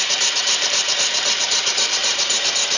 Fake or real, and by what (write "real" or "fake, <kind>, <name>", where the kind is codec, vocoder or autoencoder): fake, vocoder, BigVGAN v2